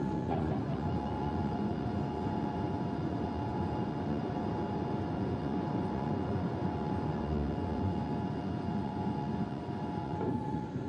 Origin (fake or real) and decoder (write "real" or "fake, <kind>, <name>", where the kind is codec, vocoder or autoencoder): fake, vocoder, Vocos